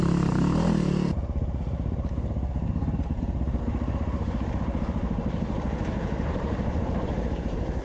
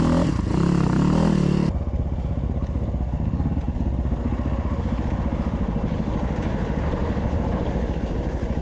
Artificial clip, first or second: first